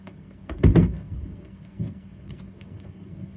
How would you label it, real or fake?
fake